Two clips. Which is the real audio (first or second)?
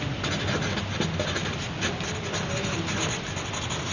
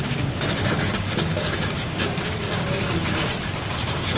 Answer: first